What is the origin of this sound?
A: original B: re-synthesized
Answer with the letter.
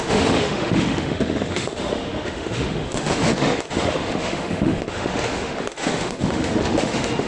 B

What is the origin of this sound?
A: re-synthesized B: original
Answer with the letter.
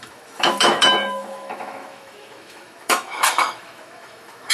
A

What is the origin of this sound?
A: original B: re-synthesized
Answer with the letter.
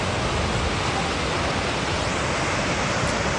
A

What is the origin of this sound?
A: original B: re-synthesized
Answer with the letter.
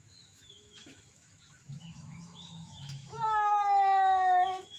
B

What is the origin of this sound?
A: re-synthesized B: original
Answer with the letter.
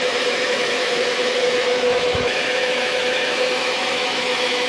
A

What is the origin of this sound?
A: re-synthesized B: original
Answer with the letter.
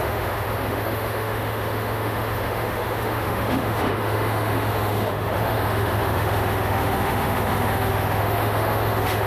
A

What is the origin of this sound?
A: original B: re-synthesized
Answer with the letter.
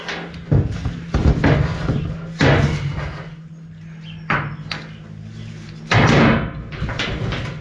A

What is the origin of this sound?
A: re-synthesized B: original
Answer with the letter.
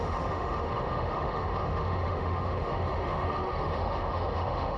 A